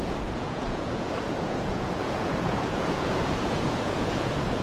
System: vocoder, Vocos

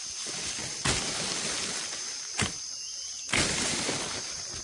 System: none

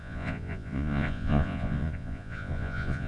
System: vocoder, Vocos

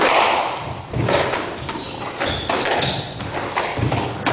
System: none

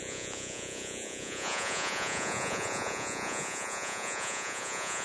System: vocoder, Vocos